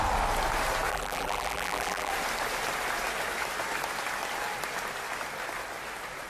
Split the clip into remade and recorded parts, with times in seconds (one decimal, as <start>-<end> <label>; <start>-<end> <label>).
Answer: 0.0-0.9 recorded; 0.9-2.1 remade; 2.1-6.3 recorded